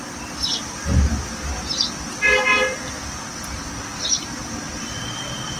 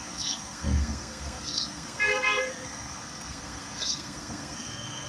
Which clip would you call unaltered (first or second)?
first